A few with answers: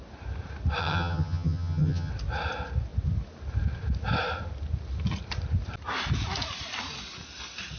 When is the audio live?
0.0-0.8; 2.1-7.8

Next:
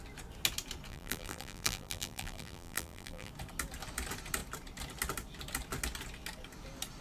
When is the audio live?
0.0-0.9; 3.3-7.0

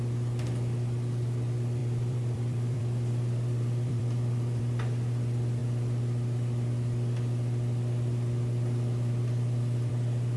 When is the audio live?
0.0-1.8; 4.6-10.4